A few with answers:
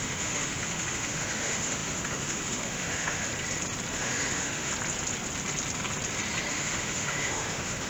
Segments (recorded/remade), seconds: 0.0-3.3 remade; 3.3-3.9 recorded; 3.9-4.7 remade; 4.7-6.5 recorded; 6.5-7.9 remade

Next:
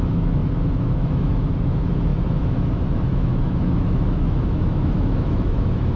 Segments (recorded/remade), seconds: 0.0-6.0 remade

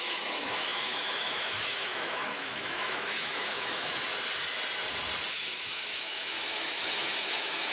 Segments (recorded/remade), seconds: 0.0-4.0 remade; 4.0-5.3 recorded; 5.3-7.7 remade

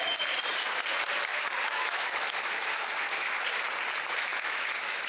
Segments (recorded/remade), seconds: 0.0-1.3 recorded; 1.3-3.4 remade; 3.4-4.3 recorded; 4.3-5.1 remade

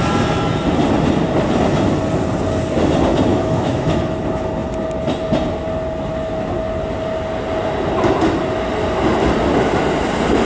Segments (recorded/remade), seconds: 0.0-3.3 recorded; 3.3-4.0 remade; 4.0-10.4 recorded

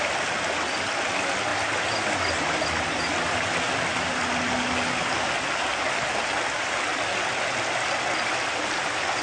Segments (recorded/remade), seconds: 0.0-9.2 recorded